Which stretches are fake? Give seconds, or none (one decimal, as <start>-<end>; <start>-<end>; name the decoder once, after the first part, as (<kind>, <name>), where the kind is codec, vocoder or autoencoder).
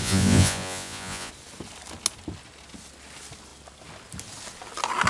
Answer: 0.0-1.3 (vocoder, Vocos)